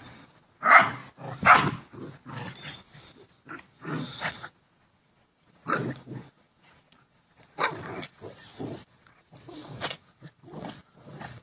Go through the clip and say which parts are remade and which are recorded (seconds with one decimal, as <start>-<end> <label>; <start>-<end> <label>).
0.0-1.0 remade; 1.0-3.7 recorded; 3.7-11.4 remade